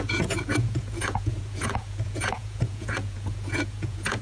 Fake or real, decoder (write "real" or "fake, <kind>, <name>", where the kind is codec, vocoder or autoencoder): fake, vocoder, Vocos